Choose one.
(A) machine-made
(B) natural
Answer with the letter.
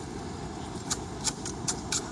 B